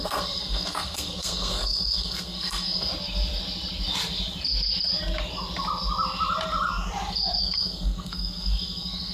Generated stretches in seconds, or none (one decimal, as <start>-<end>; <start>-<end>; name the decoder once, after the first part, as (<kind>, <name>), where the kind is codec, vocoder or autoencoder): 0.0-2.9 (codec, SNAC); 7.4-9.1

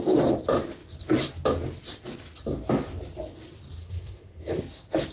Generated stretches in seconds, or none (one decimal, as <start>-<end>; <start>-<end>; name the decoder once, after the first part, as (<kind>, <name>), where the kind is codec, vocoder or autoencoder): 3.8-4.6 (codec, SNAC)

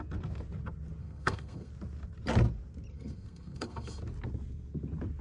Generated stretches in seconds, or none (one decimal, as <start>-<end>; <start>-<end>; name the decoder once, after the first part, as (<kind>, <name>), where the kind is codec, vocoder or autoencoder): 1.0-1.7 (codec, SNAC); 2.9-4.0

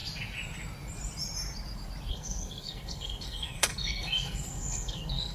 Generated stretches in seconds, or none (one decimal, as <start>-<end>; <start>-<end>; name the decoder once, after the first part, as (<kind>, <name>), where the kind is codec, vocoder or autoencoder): 2.1-5.3 (codec, SNAC)

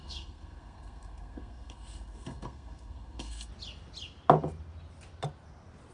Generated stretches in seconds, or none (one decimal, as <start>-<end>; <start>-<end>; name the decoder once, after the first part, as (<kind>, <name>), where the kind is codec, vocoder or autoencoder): 0.0-3.5 (codec, SNAC)

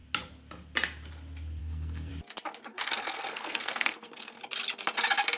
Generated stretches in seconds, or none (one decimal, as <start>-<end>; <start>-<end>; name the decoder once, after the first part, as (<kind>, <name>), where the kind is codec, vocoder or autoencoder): 1.6-2.1 (codec, SNAC); 2.7-4.4

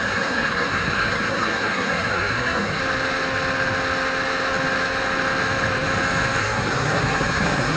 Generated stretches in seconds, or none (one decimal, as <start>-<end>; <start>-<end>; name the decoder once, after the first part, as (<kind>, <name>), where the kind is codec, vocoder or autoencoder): 0.0-2.8 (codec, SNAC); 6.4-7.8

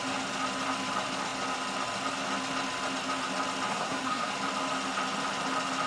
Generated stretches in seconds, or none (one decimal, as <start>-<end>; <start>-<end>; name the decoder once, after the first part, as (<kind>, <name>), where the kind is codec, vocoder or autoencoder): 3.7-4.3 (codec, SNAC)